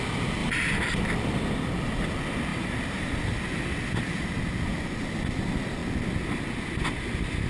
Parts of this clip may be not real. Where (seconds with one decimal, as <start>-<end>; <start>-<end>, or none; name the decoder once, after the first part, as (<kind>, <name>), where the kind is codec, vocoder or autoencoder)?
0.4-1.0 (vocoder, BigVGAN v2); 2.5-3.1